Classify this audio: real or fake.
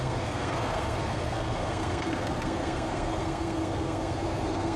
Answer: fake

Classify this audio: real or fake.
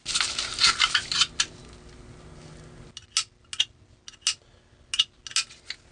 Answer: real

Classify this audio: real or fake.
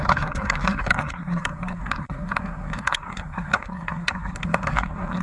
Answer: fake